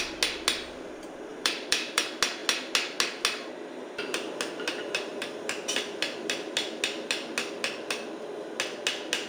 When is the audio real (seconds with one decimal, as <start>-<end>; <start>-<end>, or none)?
0.0-1.3; 2.0-9.3